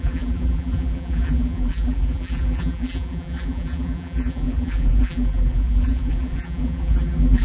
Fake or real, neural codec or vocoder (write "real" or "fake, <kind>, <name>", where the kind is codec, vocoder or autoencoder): fake, vocoder, BigVGAN v2